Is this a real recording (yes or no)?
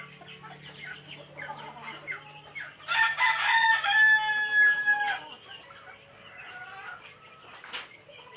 yes